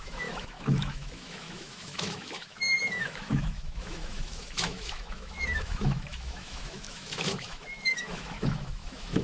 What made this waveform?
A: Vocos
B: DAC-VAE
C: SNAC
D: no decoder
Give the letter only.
B